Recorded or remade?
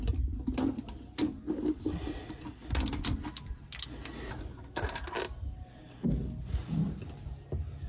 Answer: recorded